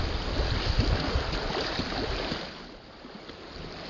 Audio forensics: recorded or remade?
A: recorded